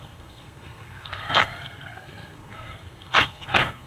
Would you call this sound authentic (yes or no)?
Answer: no